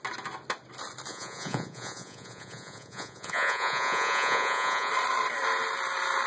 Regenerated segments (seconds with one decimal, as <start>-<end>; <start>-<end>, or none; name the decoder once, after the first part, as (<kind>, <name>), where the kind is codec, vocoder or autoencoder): 1.1-4.9 (vocoder, Vocos)